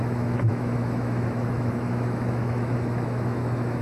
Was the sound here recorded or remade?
remade